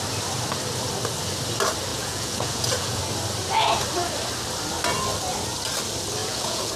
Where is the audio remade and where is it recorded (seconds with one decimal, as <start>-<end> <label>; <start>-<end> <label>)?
0.0-1.9 recorded; 1.9-3.0 remade; 3.0-6.2 recorded; 6.2-6.8 remade